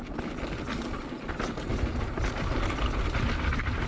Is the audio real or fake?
real